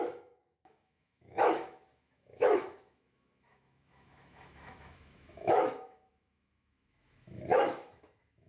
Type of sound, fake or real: fake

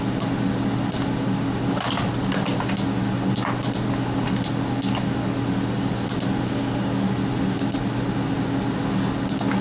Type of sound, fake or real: real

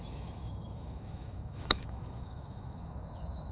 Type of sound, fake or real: fake